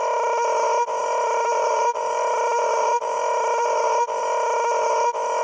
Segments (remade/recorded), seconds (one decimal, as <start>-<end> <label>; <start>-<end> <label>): 0.0-1.0 recorded; 1.0-4.2 remade; 4.2-5.4 recorded